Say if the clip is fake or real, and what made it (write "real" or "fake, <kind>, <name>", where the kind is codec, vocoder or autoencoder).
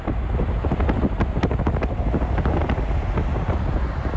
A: real